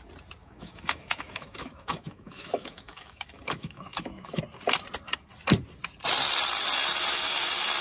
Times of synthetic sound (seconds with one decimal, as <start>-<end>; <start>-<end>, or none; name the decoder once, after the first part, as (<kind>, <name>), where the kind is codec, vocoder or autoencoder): 0.4-4.4 (autoencoder, DAC-VAE)